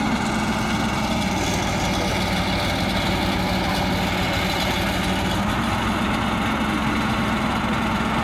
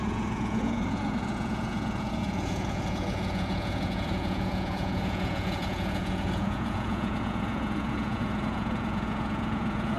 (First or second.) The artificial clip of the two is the second